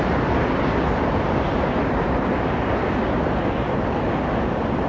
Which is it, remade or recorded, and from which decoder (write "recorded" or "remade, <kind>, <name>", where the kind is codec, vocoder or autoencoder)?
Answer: recorded